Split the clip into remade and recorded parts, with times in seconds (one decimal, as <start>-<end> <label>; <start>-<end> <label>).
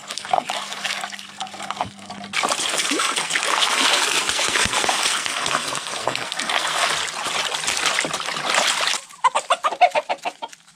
0.0-2.1 remade; 2.1-2.7 recorded; 2.7-6.9 remade; 6.9-10.8 recorded